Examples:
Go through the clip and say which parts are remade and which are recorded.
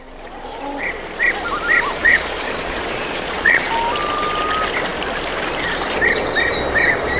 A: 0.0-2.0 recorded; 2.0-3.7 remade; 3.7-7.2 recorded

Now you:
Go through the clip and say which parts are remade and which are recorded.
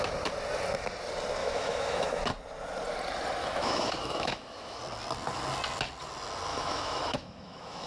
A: 0.0-1.4 recorded; 1.4-2.2 remade; 2.2-3.4 recorded; 3.4-4.8 remade; 4.8-6.5 recorded; 6.5-7.9 remade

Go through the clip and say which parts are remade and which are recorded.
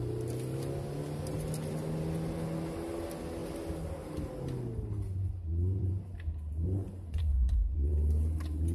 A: 0.0-5.2 recorded; 5.2-5.9 remade; 5.9-6.8 recorded; 6.8-7.9 remade; 7.9-8.7 recorded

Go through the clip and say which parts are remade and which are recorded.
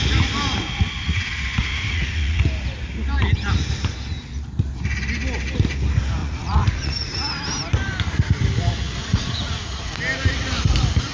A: 0.0-1.6 recorded; 1.6-2.4 remade; 2.4-6.2 recorded; 6.2-7.1 remade; 7.1-9.0 recorded; 9.0-9.9 remade; 9.9-11.1 recorded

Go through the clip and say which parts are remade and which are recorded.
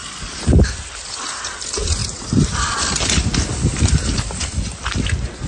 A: 0.0-5.5 recorded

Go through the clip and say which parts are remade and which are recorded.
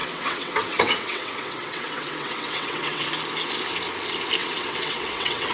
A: 0.0-3.1 remade; 3.1-4.4 recorded; 4.4-5.5 remade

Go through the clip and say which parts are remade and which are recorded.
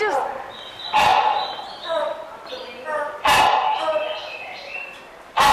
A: 0.0-1.1 recorded; 1.1-2.5 remade; 2.5-4.2 recorded; 4.2-5.0 remade; 5.0-5.5 recorded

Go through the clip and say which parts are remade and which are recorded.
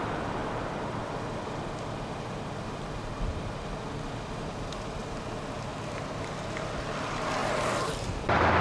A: 0.0-0.4 recorded; 0.4-1.0 remade; 1.0-5.7 recorded; 5.7-6.3 remade; 6.3-7.4 recorded; 7.4-8.2 remade; 8.2-8.6 recorded